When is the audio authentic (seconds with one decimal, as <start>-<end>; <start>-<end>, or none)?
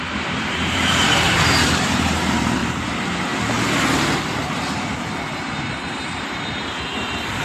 none